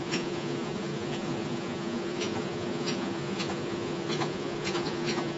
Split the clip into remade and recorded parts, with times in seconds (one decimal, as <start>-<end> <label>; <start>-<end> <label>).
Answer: 0.0-5.4 remade

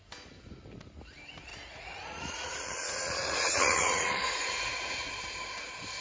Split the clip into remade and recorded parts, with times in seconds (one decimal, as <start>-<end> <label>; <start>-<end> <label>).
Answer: 0.0-1.5 recorded; 1.5-5.1 remade; 5.1-6.0 recorded